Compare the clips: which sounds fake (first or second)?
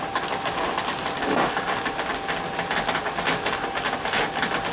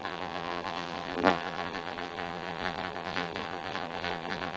second